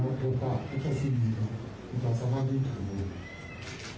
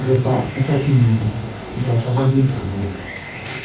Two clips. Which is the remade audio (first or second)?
second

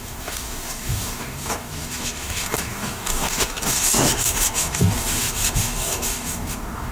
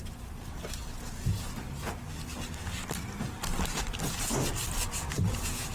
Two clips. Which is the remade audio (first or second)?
first